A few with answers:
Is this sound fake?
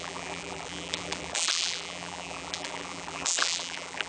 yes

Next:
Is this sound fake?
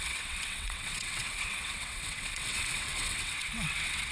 yes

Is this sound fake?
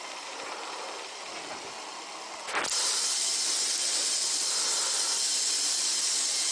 no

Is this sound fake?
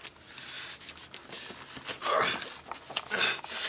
no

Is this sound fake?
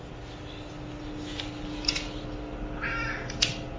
no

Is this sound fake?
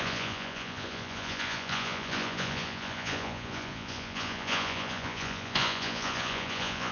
yes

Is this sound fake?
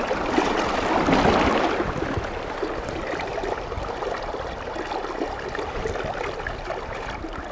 no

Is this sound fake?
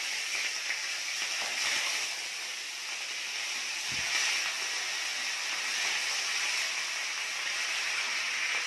no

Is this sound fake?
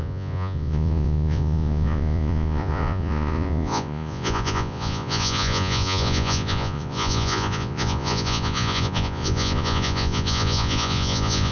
yes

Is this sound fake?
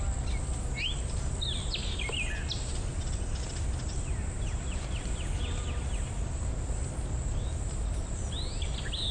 no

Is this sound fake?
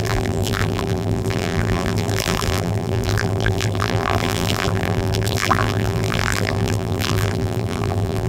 yes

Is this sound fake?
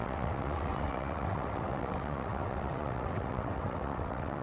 yes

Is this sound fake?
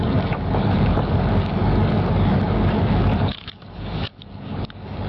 yes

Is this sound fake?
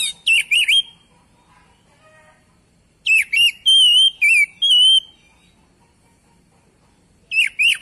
no